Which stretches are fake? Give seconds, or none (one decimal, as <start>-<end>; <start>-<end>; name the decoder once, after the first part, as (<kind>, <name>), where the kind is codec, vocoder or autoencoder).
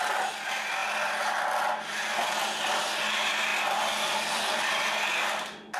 none